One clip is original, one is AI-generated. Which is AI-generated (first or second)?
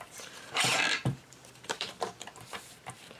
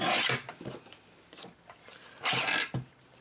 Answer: first